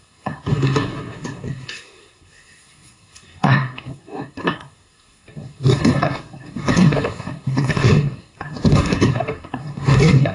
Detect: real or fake fake